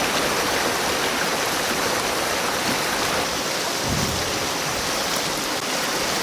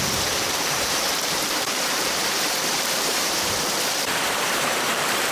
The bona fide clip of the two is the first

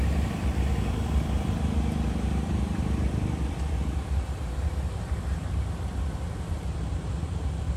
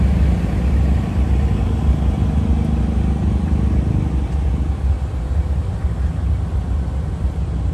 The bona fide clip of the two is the second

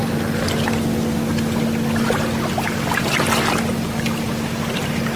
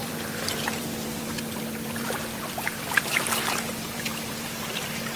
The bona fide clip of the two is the first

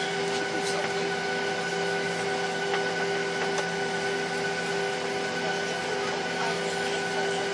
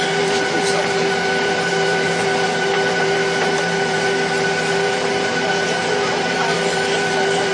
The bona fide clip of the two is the first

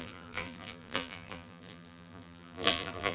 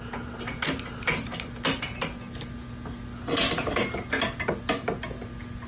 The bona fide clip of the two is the second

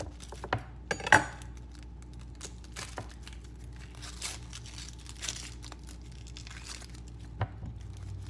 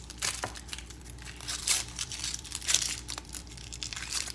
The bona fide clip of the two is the first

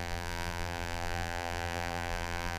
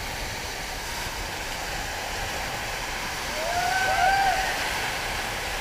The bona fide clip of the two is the second